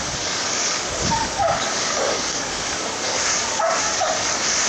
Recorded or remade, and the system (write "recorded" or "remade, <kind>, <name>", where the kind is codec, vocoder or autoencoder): remade, codec, DAC